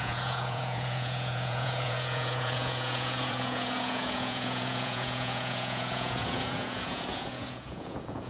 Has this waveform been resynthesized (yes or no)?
yes